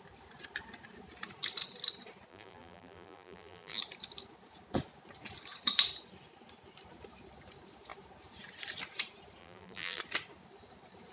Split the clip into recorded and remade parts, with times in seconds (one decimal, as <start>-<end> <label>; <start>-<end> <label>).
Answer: 0.0-2.3 recorded; 2.3-3.8 remade; 3.8-9.4 recorded; 9.4-10.0 remade; 10.0-11.1 recorded